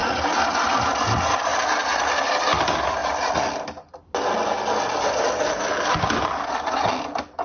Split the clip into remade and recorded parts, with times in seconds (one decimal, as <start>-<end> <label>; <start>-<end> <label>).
0.0-7.4 recorded